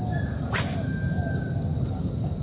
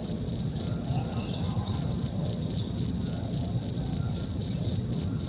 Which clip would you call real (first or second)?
first